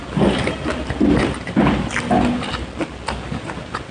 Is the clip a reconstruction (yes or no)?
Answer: no